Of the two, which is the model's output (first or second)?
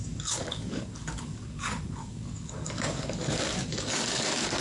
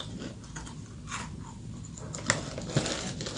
first